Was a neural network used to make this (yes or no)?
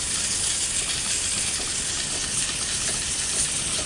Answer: no